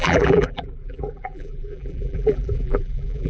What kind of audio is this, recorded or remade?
remade